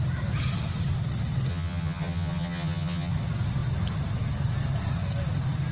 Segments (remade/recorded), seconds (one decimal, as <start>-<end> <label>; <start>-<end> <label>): 0.0-1.5 recorded; 1.5-3.1 remade; 3.1-5.7 recorded